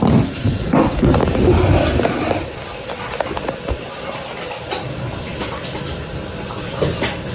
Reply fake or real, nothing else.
real